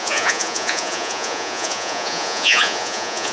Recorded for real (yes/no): no